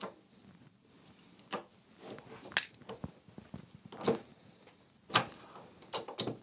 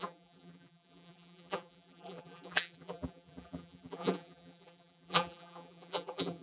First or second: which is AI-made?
second